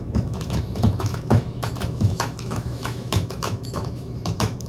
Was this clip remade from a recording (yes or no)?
yes